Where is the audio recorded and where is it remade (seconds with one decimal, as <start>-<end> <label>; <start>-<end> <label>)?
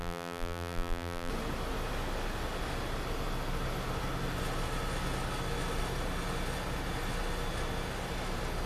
0.0-1.3 remade; 1.3-8.7 recorded